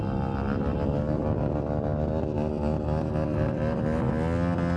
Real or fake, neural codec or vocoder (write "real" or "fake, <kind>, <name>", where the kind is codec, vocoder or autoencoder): real